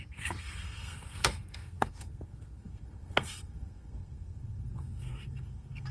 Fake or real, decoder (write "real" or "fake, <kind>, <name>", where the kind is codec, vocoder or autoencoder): fake, codec, SNAC